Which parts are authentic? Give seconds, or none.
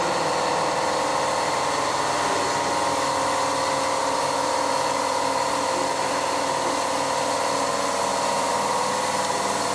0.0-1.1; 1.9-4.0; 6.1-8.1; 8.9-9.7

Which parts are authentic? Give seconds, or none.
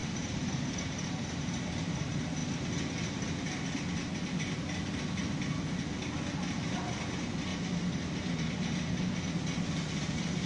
2.4-6.4; 7.5-10.1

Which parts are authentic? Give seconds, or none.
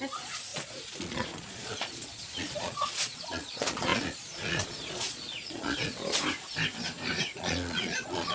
6.0-7.2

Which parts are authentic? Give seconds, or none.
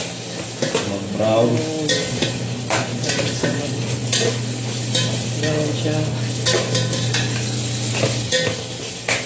0.0-2.9; 3.6-9.3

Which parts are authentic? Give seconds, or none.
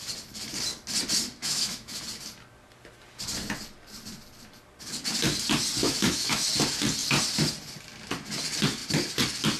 0.0-1.4; 2.0-5.8; 6.5-9.6